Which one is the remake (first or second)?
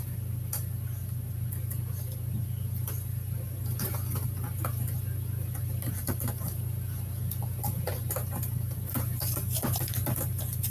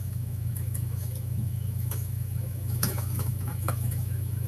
second